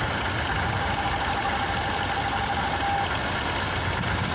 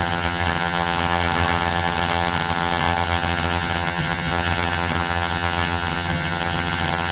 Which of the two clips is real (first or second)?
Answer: first